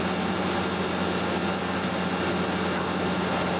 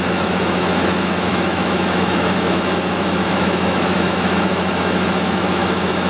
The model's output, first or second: second